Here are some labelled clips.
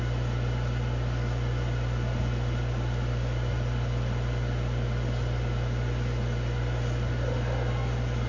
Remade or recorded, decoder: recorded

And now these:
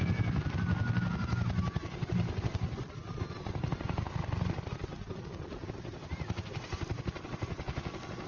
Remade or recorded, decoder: recorded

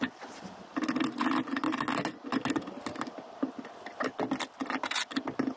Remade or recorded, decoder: recorded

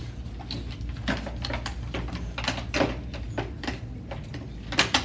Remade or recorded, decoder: recorded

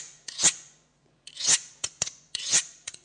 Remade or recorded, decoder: remade, vocoder, Vocos